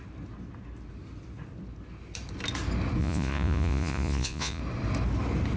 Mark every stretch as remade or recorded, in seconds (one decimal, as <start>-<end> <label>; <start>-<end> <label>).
0.0-3.0 recorded; 3.0-4.6 remade; 4.6-5.6 recorded

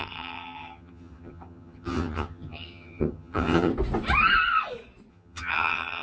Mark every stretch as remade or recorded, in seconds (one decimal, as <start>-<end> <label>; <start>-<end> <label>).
0.0-3.7 remade; 3.7-5.1 recorded; 5.1-6.0 remade

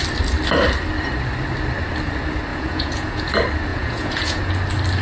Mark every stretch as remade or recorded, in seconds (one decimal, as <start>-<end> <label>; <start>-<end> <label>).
0.0-2.5 recorded; 2.5-3.3 remade; 3.3-3.7 recorded; 3.7-4.4 remade; 4.4-5.0 recorded

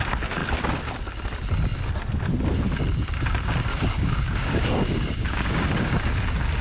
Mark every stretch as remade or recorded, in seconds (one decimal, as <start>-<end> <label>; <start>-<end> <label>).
0.0-3.7 recorded; 3.7-6.1 remade; 6.1-6.6 recorded